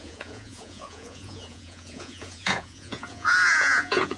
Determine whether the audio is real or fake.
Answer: fake